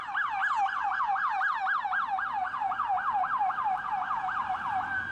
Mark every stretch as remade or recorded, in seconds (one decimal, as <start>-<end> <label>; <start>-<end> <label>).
0.0-5.1 recorded